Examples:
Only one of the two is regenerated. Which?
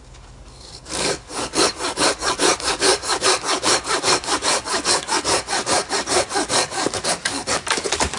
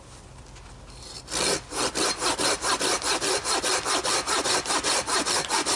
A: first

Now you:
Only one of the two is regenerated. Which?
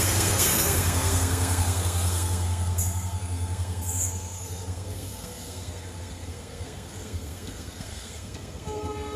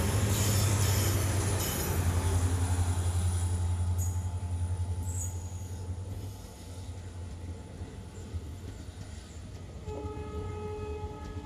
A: first